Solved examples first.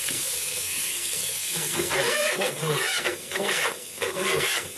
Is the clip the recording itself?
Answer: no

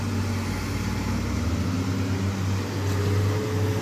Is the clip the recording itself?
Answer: yes